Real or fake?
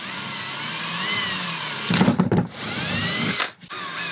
fake